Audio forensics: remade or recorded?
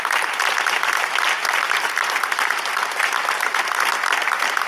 recorded